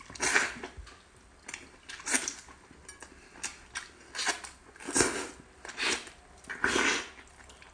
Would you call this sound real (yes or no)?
yes